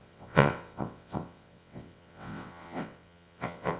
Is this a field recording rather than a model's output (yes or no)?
no